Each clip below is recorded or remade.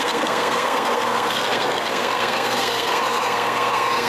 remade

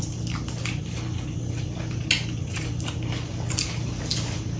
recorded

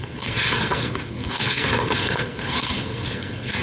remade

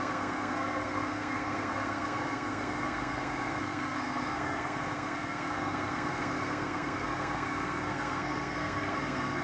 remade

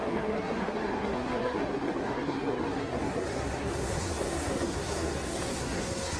remade